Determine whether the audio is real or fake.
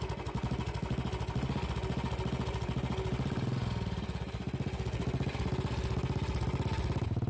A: real